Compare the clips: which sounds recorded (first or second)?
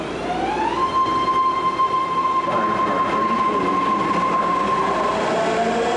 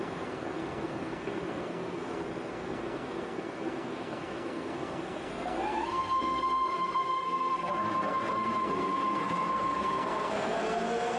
first